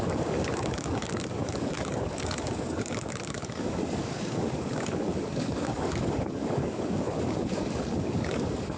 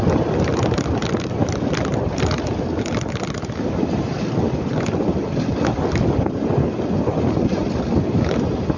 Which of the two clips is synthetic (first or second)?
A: first